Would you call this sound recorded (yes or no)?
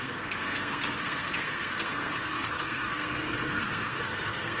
no